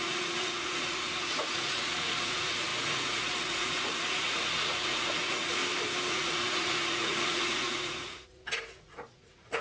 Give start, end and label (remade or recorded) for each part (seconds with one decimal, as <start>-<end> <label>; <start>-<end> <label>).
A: 0.0-5.6 remade; 5.6-6.1 recorded; 6.1-9.6 remade